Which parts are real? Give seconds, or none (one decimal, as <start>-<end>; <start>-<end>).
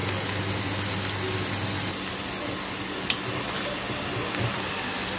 0.0-5.2